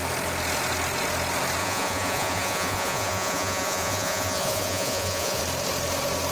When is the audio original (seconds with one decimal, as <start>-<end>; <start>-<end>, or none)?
0.0-1.6; 5.4-6.3